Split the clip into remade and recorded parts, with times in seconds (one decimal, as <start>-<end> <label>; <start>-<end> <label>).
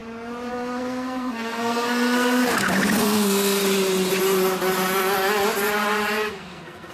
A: 0.0-0.5 recorded; 0.5-2.4 remade; 2.4-3.0 recorded; 3.0-3.6 remade; 3.6-6.3 recorded; 6.3-6.9 remade